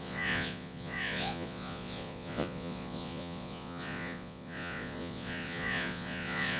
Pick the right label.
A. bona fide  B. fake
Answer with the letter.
B